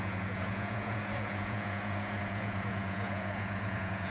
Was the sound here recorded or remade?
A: remade